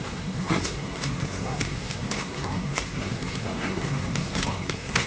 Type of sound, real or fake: fake